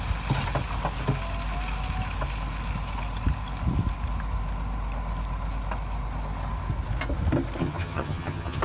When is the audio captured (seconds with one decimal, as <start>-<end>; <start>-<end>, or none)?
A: 0.0-7.6